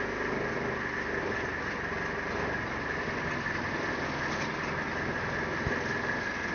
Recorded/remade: recorded